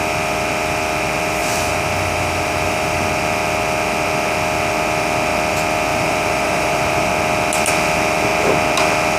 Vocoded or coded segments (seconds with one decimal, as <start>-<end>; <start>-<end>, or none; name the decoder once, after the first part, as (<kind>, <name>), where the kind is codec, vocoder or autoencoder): 1.4-3.0 (vocoder, BigVGAN v2); 5.9-7.1